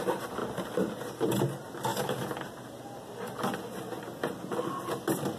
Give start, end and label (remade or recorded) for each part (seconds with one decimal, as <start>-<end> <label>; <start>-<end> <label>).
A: 0.0-5.4 recorded